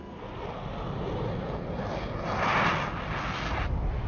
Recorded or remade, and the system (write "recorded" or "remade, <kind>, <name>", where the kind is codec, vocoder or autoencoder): recorded